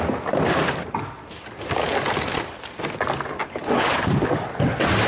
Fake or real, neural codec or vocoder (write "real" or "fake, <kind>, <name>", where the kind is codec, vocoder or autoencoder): real